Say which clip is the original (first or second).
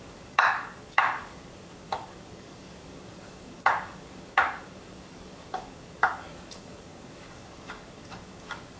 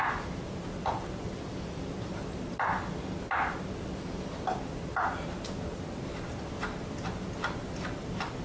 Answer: second